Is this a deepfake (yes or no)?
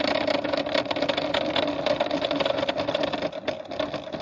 no